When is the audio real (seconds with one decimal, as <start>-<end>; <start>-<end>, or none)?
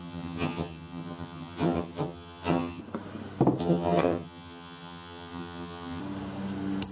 2.8-3.6; 6.0-6.9